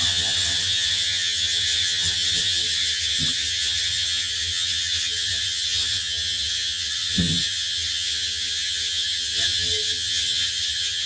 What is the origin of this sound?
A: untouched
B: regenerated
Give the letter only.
B